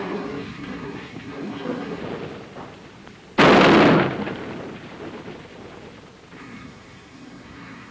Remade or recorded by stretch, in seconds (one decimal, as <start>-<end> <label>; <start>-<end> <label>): 0.0-2.0 remade; 2.0-6.4 recorded; 6.4-7.9 remade